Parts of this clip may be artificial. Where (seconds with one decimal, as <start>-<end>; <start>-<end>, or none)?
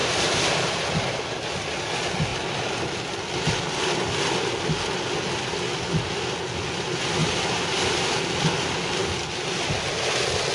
0.0-0.8; 7.2-8.2